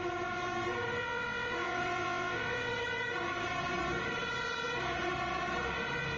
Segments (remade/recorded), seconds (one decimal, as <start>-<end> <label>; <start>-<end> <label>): 0.0-1.0 recorded; 1.0-2.7 remade; 2.7-6.2 recorded